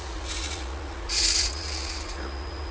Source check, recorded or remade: remade